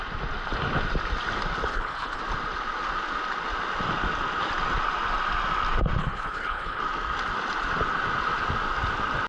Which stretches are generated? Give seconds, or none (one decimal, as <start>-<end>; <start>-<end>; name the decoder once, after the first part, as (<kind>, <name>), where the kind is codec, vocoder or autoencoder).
1.7-2.2 (codec, HILCodec); 6.0-6.8